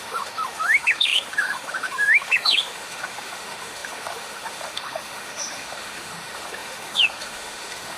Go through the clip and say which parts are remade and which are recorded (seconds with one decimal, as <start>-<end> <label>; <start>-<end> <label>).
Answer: 0.0-8.0 remade